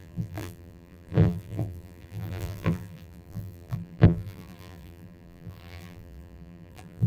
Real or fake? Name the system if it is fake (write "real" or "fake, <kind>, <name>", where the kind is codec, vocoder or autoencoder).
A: fake, vocoder, BigVGAN v2